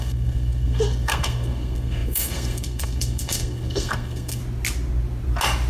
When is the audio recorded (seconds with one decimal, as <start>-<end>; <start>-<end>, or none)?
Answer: 4.4-5.7